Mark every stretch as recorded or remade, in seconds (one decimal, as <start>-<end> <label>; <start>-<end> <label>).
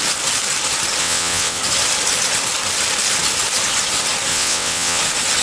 0.0-1.0 recorded; 1.0-1.6 remade; 1.6-4.3 recorded; 4.3-5.0 remade; 5.0-5.4 recorded